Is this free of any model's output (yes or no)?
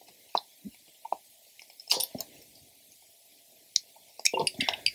yes